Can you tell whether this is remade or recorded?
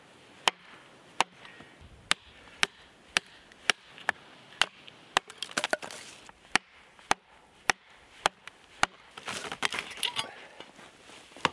recorded